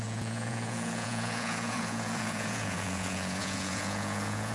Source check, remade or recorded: remade